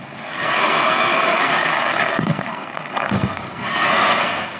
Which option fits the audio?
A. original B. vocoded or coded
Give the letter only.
B